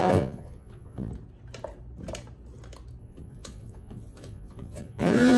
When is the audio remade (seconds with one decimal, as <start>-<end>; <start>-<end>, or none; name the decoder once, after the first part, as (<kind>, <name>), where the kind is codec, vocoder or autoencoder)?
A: 0.0-1.1 (vocoder, Vocos); 3.0-5.4